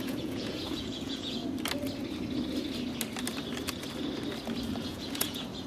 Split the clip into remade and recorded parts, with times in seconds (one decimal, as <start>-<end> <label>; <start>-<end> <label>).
0.0-1.4 remade; 1.4-4.8 recorded; 4.8-5.7 remade